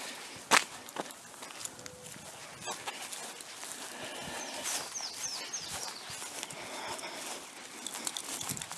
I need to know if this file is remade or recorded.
recorded